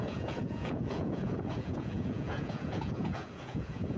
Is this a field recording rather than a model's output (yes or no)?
no